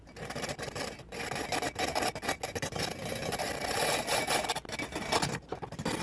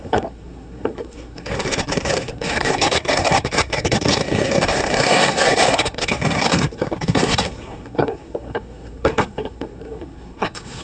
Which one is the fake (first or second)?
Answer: second